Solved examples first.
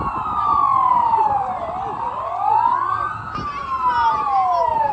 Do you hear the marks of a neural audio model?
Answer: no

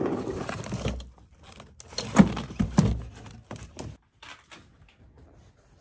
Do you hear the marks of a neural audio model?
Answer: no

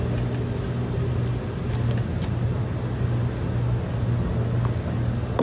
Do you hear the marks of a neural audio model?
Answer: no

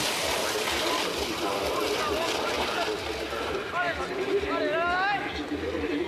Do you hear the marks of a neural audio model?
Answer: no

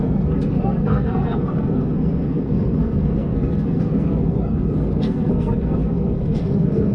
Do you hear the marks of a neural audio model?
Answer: yes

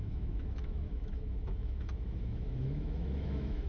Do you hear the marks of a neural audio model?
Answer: yes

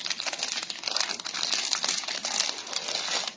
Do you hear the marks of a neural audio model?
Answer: no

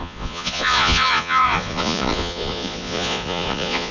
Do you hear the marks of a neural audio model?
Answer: yes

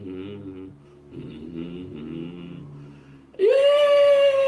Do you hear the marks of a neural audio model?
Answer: no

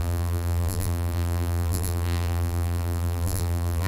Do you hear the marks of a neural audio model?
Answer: yes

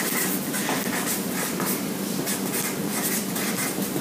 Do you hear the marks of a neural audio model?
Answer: no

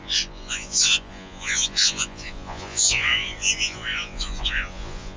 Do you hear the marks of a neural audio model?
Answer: yes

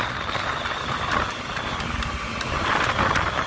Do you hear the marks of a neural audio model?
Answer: no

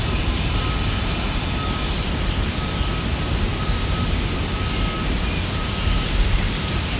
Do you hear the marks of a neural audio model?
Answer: yes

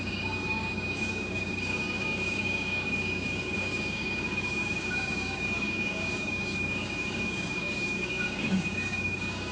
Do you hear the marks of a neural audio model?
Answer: yes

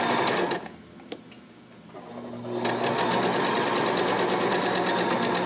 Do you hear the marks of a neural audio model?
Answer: no